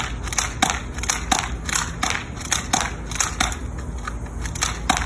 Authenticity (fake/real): real